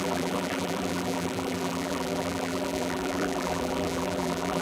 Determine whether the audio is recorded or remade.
remade